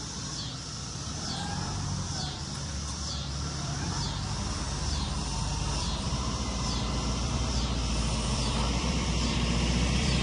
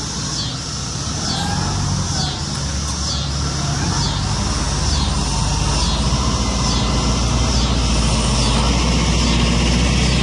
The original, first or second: second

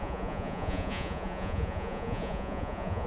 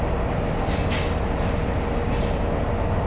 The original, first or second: second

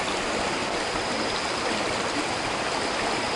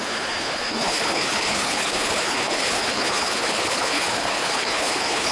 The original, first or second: first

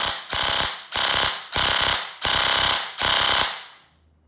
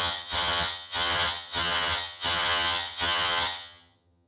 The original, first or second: first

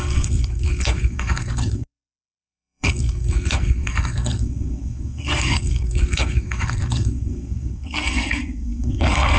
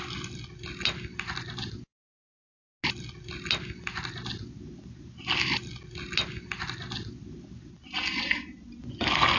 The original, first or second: second